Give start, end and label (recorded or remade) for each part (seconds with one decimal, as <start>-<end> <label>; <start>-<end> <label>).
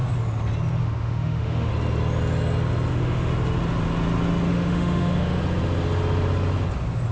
0.0-0.8 recorded; 0.8-1.7 remade; 1.7-2.9 recorded; 2.9-3.3 remade; 3.3-4.5 recorded; 4.5-5.4 remade; 5.4-7.1 recorded